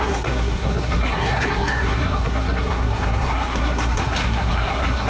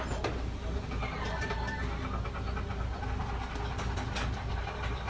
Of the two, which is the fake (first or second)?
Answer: first